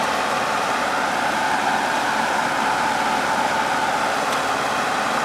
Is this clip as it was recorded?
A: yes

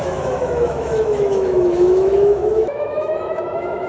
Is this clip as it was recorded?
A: no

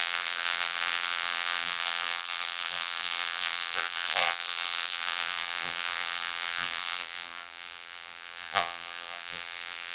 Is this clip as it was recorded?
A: no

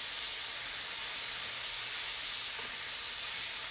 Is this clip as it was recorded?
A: yes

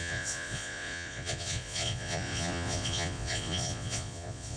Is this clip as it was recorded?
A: no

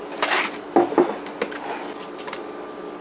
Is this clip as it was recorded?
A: yes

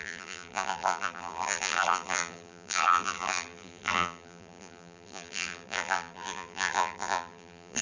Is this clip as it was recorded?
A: no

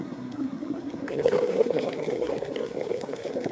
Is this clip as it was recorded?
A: no